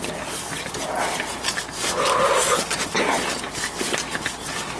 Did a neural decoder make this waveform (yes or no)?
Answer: no